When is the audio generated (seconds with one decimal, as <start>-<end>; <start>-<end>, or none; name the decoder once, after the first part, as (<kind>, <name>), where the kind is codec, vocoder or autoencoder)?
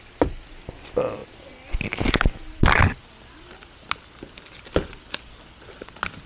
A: none